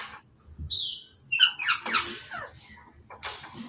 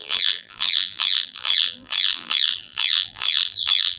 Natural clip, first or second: first